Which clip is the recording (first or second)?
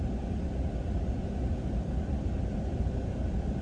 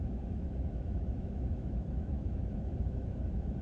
first